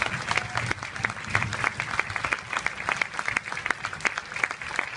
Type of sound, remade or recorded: recorded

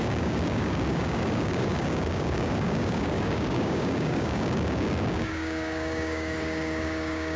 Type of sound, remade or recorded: remade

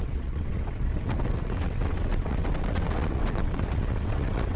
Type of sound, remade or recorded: remade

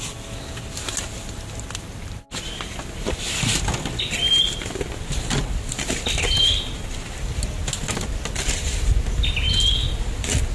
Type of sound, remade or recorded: recorded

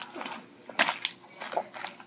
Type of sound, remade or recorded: recorded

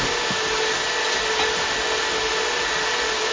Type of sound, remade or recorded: recorded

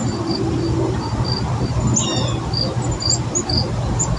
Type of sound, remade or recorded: recorded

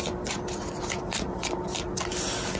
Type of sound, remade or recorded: recorded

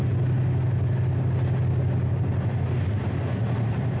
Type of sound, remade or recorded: recorded